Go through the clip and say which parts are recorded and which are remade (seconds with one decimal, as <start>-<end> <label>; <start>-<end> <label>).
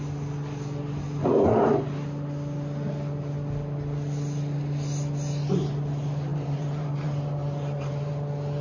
0.0-6.3 recorded; 6.3-8.1 remade; 8.1-8.6 recorded